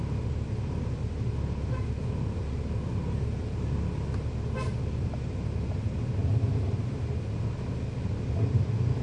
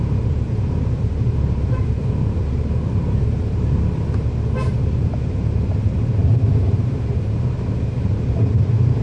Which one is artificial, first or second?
second